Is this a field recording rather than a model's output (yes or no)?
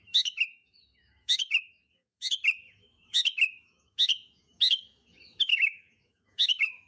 no